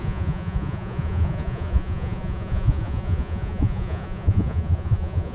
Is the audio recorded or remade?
remade